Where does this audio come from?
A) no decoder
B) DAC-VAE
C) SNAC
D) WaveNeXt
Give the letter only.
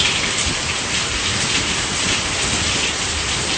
A